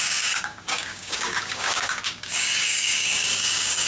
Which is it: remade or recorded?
remade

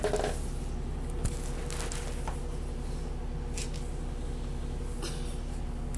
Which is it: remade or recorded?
recorded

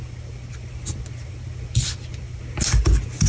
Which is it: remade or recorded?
recorded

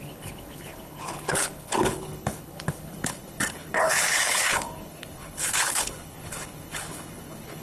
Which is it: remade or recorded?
remade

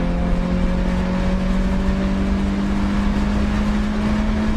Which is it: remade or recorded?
recorded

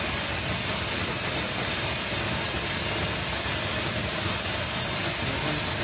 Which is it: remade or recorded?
recorded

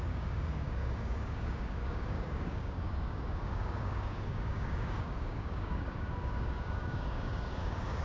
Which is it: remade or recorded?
remade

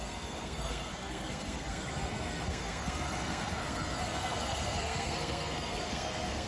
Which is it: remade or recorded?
remade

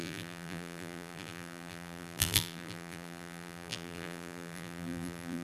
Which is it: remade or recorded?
remade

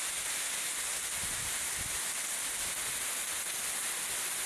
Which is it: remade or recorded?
recorded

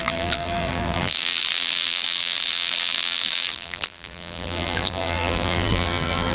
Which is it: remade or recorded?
remade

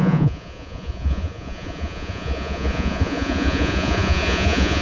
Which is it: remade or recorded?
remade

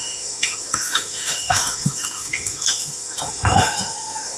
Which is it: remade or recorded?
remade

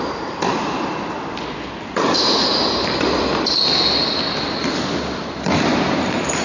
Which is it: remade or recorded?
remade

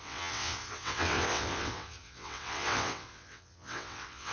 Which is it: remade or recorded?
remade